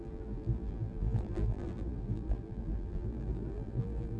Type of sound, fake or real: fake